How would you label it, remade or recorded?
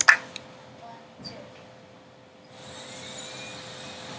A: recorded